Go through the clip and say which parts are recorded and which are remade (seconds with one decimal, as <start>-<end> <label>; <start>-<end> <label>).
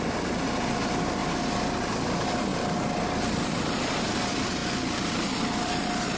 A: 0.0-1.2 remade; 1.2-1.9 recorded; 1.9-2.5 remade; 2.5-3.5 recorded; 3.5-6.2 remade